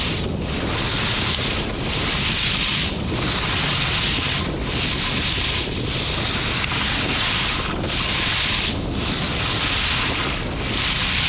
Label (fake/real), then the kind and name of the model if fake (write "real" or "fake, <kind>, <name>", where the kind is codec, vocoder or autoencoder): real